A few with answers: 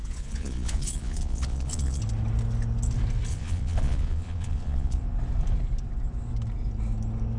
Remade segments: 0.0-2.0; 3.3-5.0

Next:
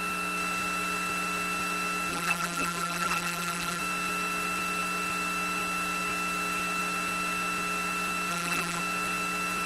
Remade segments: 2.1-3.8; 8.3-8.8

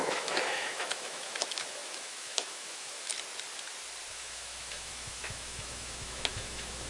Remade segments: 0.0-3.1; 4.1-6.9

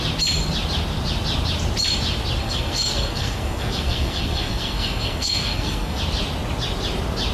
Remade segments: 2.4-6.0

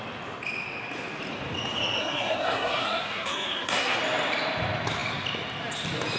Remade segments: 2.0-4.0

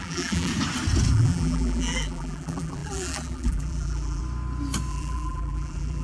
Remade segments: 0.0-0.5; 1.1-4.2; 4.9-6.0

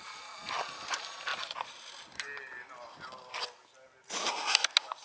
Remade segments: none